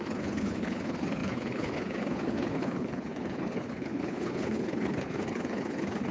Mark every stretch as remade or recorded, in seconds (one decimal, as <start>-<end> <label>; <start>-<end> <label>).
0.0-6.1 remade